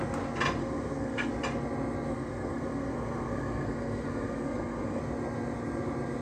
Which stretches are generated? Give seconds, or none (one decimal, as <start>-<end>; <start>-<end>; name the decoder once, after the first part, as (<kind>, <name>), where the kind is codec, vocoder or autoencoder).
0.6-1.3 (codec, SNAC); 2.1-5.0